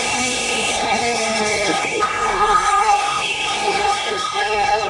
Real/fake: fake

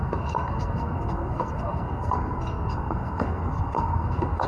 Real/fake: fake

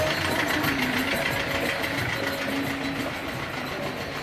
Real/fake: real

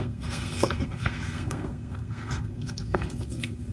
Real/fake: fake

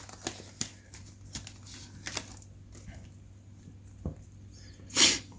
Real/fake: real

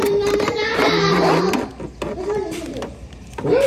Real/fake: real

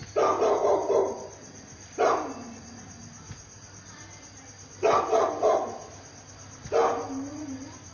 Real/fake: real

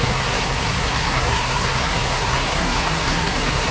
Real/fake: fake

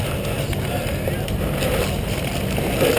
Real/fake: real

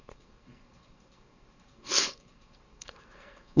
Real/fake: fake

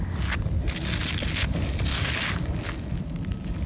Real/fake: real